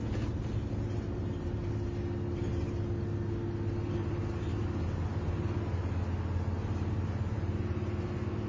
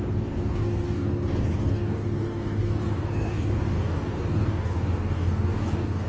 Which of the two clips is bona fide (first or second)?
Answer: first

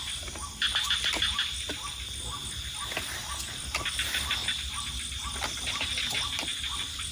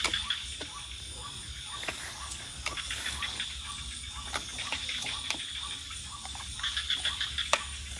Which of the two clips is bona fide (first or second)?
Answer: first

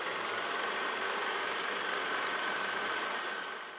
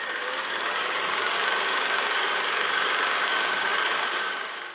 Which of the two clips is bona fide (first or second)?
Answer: first